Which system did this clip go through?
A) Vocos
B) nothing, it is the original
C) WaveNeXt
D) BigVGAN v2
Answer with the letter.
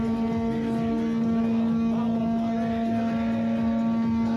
B